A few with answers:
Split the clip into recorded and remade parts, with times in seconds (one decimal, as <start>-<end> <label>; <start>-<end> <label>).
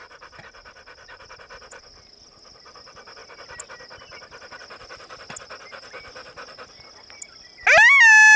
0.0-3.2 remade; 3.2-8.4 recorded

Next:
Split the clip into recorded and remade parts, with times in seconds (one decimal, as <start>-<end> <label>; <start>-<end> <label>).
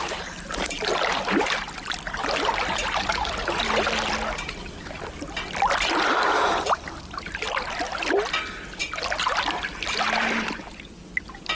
0.0-11.5 recorded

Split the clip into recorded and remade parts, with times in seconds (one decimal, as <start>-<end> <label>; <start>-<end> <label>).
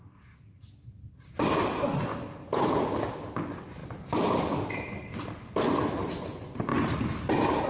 0.0-2.1 recorded; 2.1-2.6 remade; 2.6-6.7 recorded; 6.7-7.3 remade; 7.3-7.7 recorded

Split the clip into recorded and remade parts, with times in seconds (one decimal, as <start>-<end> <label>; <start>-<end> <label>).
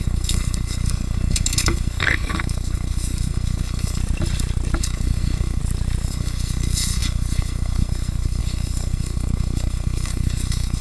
0.0-4.0 remade; 4.0-4.8 recorded; 4.8-5.6 remade; 5.6-6.1 recorded; 6.1-10.8 remade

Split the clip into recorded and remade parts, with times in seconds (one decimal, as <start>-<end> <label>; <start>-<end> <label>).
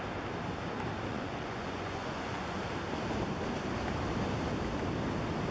0.0-1.1 recorded; 1.1-2.6 remade; 2.6-5.5 recorded